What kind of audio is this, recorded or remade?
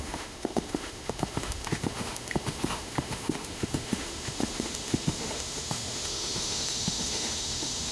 remade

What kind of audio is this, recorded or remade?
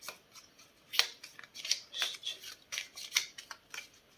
recorded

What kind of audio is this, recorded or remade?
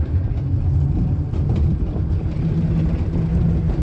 recorded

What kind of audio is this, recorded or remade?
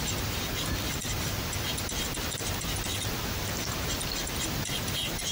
recorded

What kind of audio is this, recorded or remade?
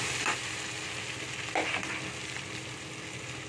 recorded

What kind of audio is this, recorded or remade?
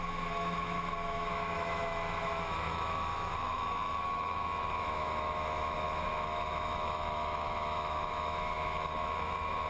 remade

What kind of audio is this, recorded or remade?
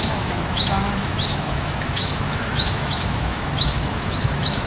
remade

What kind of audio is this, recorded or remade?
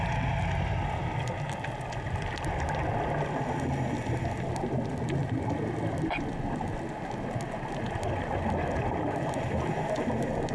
recorded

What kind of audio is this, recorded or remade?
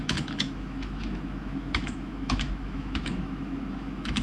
remade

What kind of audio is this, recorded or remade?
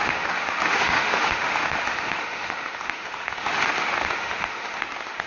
remade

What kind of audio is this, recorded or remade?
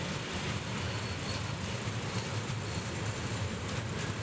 recorded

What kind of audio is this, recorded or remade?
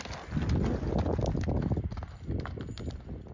recorded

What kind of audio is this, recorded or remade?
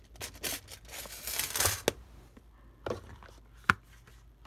recorded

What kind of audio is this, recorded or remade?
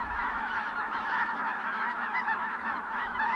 remade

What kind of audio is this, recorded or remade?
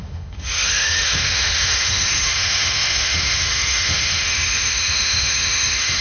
remade